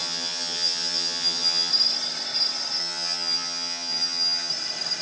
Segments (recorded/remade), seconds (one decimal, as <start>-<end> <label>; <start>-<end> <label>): 0.0-1.7 remade; 1.7-2.8 recorded; 2.8-4.5 remade; 4.5-5.0 recorded